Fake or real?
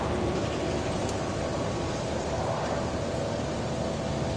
real